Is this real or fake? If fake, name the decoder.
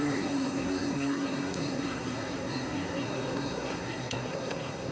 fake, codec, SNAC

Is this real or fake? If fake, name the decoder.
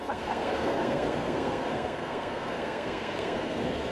fake, codec, SNAC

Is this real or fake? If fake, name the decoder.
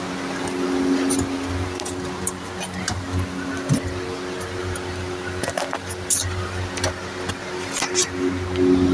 real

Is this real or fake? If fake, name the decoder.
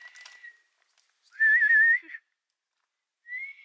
real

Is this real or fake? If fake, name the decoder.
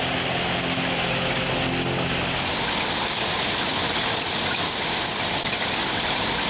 real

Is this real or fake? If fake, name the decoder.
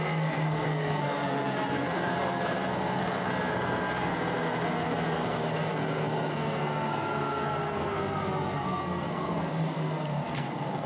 fake, codec, SNAC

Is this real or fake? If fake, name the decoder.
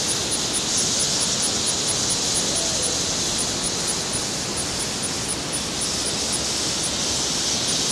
real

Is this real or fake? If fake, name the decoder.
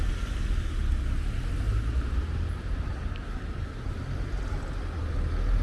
real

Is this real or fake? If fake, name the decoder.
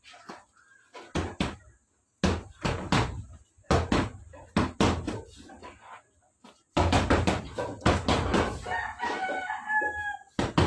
real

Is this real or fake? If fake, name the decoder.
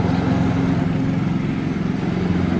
real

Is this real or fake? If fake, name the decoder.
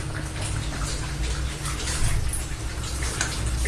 real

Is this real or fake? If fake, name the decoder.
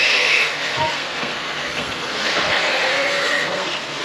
fake, codec, SNAC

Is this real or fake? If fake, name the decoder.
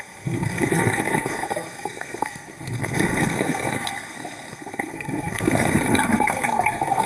fake, codec, SNAC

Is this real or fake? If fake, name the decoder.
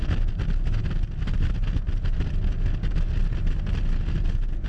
real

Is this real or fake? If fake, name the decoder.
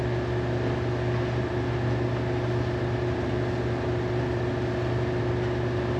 real